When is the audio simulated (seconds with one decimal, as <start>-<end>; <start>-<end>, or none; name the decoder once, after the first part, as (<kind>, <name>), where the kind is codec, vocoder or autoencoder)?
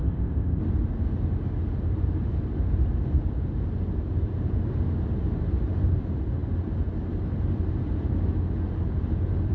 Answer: 0.0-0.6 (codec, ZipCodec)